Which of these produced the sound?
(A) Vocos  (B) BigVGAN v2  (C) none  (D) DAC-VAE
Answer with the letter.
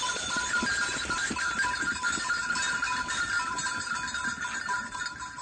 C